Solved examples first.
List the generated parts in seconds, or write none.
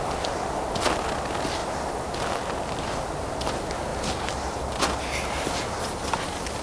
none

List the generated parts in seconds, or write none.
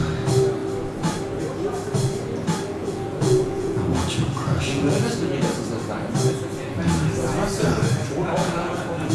2.8-5.4; 8.2-9.1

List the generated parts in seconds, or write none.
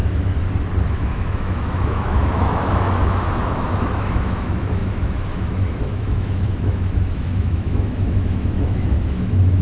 0.9-9.6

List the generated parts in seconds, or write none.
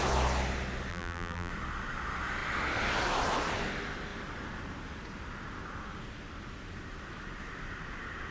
0.9-1.5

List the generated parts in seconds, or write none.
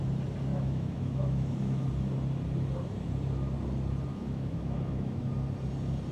0.5-1.9; 4.1-5.2